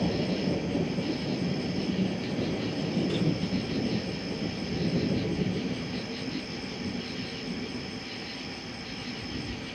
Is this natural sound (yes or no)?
no